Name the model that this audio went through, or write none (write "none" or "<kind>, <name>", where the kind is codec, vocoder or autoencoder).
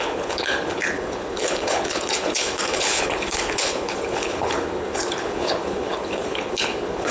codec, HILCodec